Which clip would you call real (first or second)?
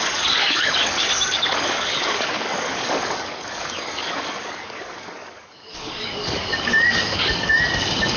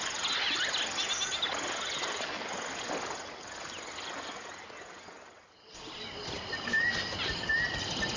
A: second